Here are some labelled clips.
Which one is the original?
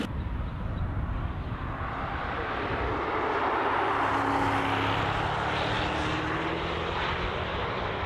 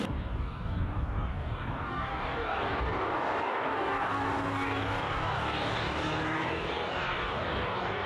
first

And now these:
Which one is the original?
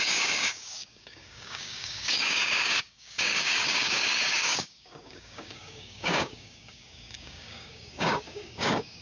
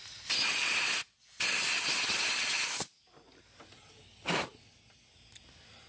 second